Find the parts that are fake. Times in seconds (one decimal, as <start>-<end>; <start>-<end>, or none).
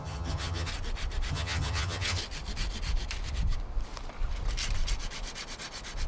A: 0.0-0.7; 1.3-2.2